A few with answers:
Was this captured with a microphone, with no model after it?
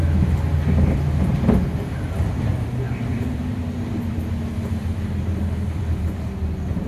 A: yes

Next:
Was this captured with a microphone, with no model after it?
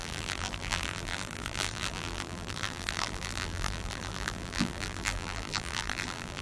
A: no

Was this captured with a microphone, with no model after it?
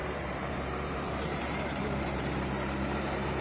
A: no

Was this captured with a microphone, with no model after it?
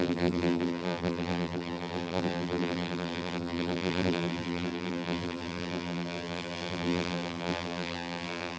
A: no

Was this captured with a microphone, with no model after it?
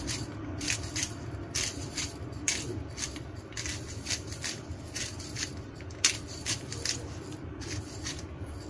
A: no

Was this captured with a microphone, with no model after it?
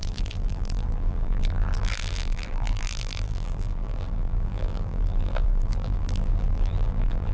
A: no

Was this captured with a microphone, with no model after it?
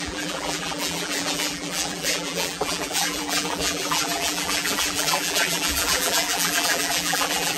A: no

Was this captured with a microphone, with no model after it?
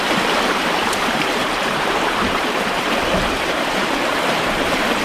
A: no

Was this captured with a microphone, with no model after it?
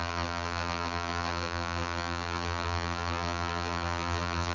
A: no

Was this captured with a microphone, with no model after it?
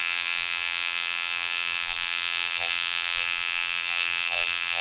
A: no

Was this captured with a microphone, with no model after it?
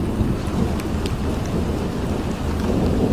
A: yes